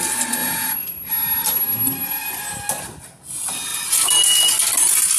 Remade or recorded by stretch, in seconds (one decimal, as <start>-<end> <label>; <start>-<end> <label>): 0.0-0.4 recorded; 0.4-1.1 remade; 1.1-5.2 recorded